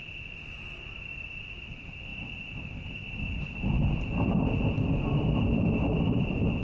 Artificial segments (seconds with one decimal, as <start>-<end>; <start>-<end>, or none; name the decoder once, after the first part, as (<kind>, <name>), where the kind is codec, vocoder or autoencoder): none